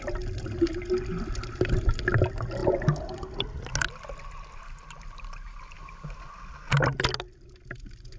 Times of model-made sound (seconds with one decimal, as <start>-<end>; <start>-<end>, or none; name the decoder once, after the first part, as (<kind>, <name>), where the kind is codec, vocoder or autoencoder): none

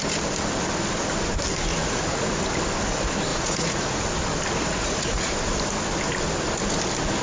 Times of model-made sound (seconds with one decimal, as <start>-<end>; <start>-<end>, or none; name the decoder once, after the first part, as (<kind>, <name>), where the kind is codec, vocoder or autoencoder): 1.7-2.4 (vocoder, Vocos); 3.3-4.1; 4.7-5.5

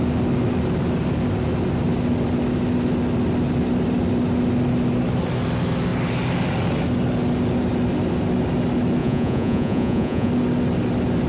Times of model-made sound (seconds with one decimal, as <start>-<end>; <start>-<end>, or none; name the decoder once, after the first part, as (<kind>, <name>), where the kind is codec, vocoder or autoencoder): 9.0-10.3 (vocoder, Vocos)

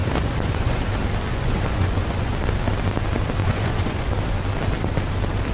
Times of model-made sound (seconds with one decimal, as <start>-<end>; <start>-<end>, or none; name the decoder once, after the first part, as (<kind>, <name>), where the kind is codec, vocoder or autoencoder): 0.0-0.8 (vocoder, Vocos); 1.3-2.3; 3.4-4.1

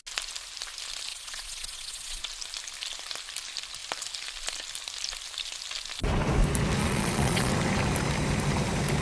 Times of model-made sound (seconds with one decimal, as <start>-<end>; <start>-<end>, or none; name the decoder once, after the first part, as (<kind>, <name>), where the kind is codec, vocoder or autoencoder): 1.1-2.2 (vocoder, Vocos); 6.8-7.5

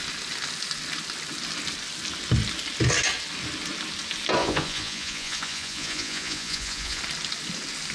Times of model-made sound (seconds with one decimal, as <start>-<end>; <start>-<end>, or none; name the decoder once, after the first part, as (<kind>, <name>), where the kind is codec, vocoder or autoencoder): 4.4-7.0 (vocoder, Vocos)

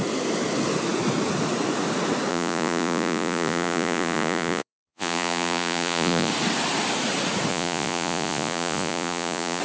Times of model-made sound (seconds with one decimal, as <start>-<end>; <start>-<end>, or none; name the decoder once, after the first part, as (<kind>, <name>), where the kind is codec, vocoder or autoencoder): 2.3-6.3 (vocoder, Vocos); 7.5-9.6